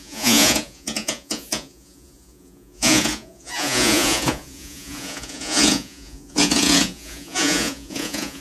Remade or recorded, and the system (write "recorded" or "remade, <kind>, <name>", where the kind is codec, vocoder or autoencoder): remade, vocoder, Vocos